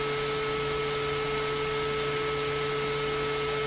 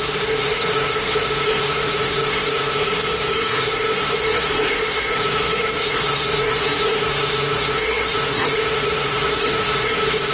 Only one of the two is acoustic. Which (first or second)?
first